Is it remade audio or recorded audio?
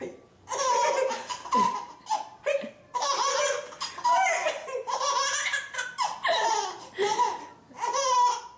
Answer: recorded